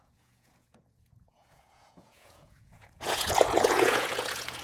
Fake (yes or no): yes